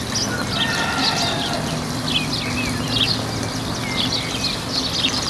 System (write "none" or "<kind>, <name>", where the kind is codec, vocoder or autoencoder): none